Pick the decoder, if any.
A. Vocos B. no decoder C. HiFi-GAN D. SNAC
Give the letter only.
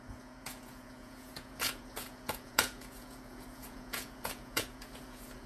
A